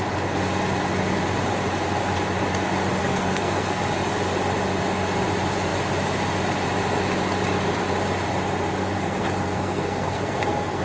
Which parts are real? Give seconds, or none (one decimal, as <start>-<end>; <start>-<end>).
0.0-3.0; 3.8-8.8